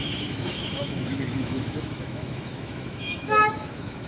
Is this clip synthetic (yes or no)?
yes